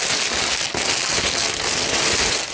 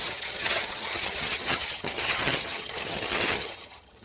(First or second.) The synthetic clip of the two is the second